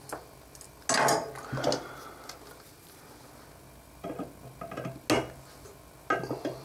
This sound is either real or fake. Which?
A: real